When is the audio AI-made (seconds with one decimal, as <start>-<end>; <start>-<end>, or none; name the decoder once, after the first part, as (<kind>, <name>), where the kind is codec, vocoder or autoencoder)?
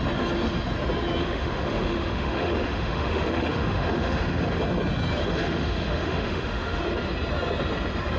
1.2-4.6 (autoencoder, DAC-VAE); 5.2-6.8